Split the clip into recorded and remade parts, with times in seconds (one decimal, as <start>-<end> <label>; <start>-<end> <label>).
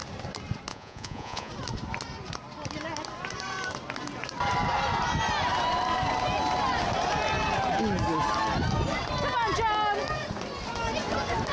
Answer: 0.0-0.7 recorded; 0.7-1.5 remade; 1.5-11.5 recorded